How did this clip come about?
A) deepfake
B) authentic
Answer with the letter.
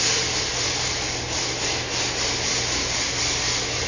B